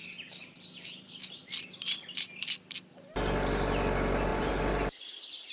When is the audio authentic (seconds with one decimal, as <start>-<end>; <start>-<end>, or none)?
1.4-4.3; 5.0-5.5